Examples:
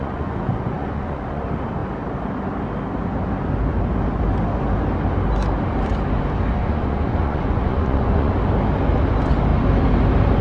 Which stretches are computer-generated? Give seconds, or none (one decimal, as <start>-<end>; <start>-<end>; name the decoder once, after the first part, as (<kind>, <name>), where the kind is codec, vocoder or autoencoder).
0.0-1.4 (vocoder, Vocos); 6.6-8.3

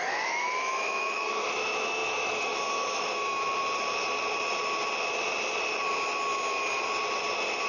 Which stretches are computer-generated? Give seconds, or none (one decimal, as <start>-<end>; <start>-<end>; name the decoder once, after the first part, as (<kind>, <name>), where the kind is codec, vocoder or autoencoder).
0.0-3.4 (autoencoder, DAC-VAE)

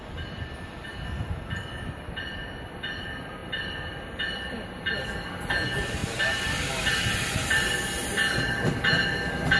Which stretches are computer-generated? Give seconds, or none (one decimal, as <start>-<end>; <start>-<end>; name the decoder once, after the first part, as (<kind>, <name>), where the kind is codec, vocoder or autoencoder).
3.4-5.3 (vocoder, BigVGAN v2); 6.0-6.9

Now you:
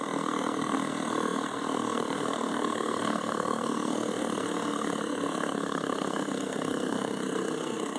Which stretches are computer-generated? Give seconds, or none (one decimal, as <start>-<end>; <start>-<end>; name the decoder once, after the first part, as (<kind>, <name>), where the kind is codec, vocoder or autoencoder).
0.0-8.0 (codec, SNAC)

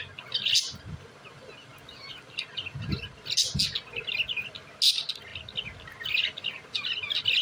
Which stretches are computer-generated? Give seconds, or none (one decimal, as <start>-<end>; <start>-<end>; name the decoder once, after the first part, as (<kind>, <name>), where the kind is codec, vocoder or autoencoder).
none